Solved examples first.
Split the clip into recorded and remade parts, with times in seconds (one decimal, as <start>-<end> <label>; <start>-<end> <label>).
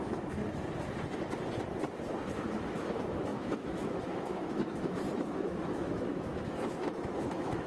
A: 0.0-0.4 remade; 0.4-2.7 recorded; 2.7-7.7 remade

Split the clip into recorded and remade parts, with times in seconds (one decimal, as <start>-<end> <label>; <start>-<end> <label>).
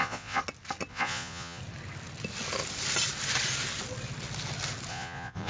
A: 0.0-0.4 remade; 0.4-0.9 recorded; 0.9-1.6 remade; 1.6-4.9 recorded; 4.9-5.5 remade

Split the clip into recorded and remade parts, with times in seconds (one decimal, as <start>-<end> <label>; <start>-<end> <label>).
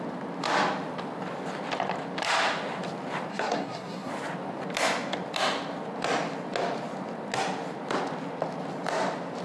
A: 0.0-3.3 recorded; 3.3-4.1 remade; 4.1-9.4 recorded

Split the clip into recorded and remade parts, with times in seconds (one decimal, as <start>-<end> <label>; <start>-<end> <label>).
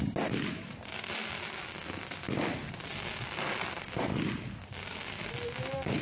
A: 0.0-1.2 remade; 1.2-2.7 recorded; 2.7-4.1 remade; 4.1-5.3 recorded; 5.3-6.0 remade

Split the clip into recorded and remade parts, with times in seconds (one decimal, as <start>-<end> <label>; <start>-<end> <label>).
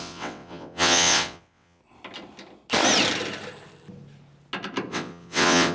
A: 0.0-1.8 remade; 1.8-4.9 recorded; 4.9-5.7 remade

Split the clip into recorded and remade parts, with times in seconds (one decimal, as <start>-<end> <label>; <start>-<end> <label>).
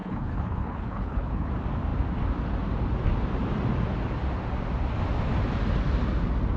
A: 0.0-1.5 remade; 1.5-6.6 recorded